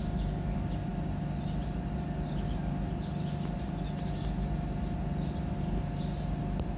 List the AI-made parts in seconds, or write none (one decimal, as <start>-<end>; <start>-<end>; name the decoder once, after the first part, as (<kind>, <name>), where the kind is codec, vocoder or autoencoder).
none